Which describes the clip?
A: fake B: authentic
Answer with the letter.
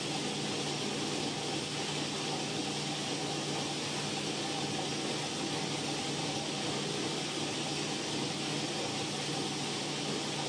B